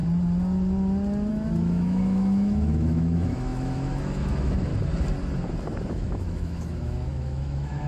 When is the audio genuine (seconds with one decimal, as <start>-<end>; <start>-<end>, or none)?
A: 0.0-1.3; 4.7-5.9